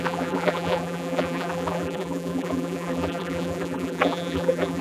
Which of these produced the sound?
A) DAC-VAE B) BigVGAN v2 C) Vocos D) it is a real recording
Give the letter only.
B